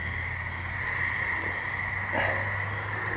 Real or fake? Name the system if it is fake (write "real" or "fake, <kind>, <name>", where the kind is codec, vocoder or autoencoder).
real